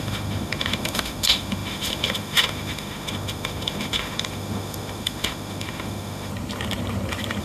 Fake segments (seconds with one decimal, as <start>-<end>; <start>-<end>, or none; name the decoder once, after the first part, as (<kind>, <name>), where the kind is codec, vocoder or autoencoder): 0.0-6.3 (autoencoder, DAC-VAE)